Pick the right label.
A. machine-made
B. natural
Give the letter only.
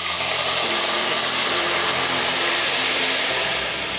A